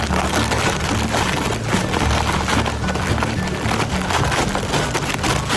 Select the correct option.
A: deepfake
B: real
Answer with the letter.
B